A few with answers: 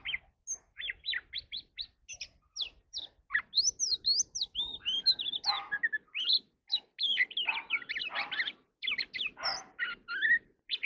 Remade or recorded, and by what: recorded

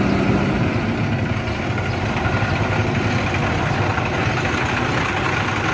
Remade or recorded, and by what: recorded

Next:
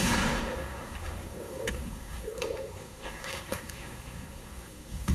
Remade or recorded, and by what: remade, codec, SNAC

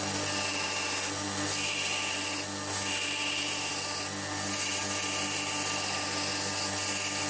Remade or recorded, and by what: recorded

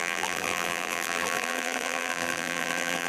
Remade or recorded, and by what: remade, vocoder, BigVGAN v2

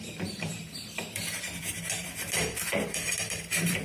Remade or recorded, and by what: remade, vocoder, BigVGAN v2